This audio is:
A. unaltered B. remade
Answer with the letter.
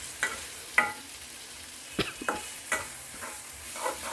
B